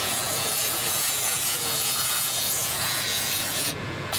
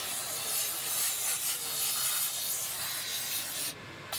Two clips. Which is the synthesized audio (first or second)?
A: first